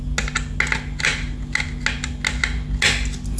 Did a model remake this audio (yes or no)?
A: no